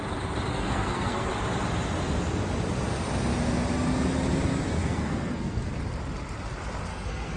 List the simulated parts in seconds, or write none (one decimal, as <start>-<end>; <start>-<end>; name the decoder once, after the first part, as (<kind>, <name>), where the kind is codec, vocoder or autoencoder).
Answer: 0.5-1.3 (codec, SNAC); 4.8-5.7; 6.9-7.4